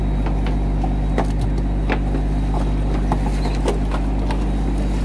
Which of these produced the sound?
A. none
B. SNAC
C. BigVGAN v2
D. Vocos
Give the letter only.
A